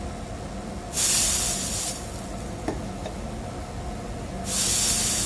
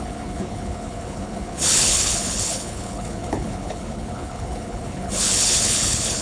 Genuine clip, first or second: first